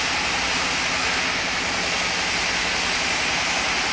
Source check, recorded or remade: recorded